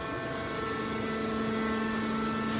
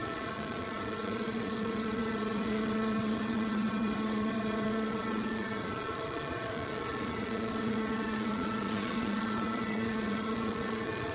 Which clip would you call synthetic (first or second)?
second